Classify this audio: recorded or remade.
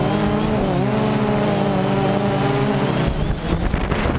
recorded